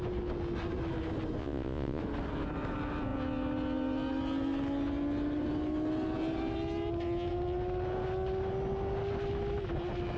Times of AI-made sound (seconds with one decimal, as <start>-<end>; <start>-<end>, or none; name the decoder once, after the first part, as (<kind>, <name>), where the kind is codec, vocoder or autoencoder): 1.4-2.0 (vocoder, Vocos)